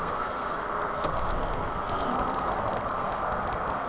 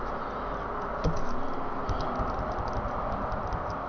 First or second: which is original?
second